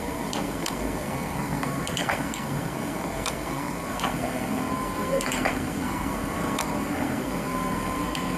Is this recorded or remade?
remade